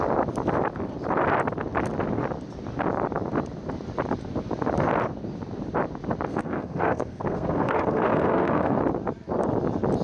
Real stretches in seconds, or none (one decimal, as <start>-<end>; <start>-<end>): 0.0-6.3; 8.8-10.0